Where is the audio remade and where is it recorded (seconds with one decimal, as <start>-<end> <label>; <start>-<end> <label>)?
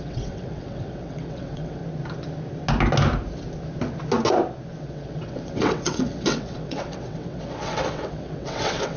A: 0.0-1.8 remade; 1.8-4.8 recorded; 4.8-9.0 remade